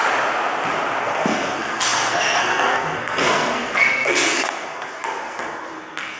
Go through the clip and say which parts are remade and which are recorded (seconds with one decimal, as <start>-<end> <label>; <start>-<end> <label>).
0.0-1.0 recorded; 1.0-6.2 remade